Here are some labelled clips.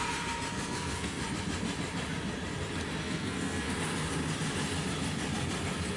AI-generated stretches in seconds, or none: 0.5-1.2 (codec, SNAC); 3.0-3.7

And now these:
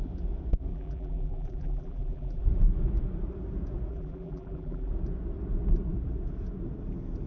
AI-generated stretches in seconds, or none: 0.7-2.4 (vocoder, BigVGAN v2); 3.9-4.9

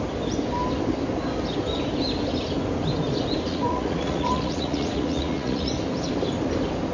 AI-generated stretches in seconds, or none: 3.5-5.7 (vocoder, Vocos)

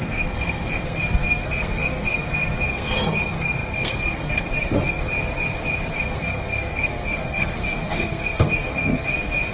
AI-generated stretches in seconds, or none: 0.0-5.1 (codec, SNAC); 5.9-9.5